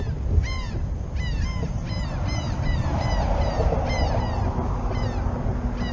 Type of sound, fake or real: real